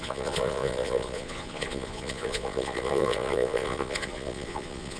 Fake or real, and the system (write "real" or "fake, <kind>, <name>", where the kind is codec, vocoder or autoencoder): fake, vocoder, Vocos